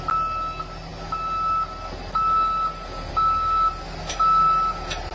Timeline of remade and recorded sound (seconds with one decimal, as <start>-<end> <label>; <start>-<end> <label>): 0.0-5.1 recorded